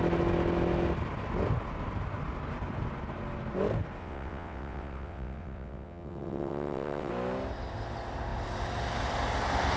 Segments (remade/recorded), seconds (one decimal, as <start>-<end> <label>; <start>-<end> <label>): 0.0-4.0 recorded; 4.0-7.1 remade; 7.1-9.8 recorded